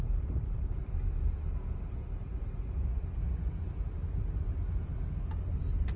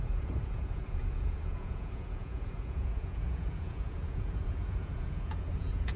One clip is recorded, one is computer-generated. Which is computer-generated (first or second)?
second